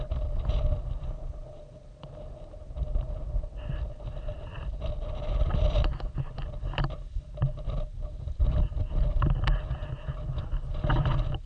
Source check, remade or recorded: recorded